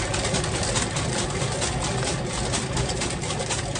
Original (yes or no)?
yes